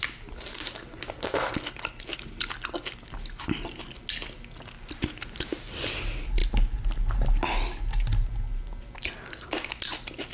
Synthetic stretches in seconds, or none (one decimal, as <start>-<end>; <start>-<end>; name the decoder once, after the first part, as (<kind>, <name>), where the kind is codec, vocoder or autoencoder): none